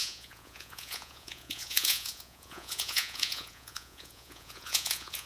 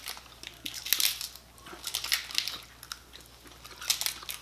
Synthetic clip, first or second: first